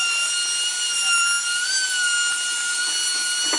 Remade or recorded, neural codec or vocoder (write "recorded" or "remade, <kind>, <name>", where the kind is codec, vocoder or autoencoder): recorded